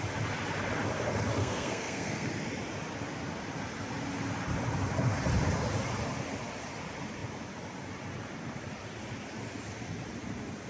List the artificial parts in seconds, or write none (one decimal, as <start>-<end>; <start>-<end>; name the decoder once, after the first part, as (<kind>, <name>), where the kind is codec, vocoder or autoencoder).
1.4-2.3 (codec, SNAC)